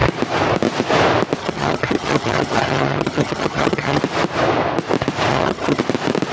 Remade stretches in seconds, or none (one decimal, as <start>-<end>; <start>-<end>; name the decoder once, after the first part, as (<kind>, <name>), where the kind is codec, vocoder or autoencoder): 1.4-4.0 (vocoder, HiFi-GAN); 5.3-5.8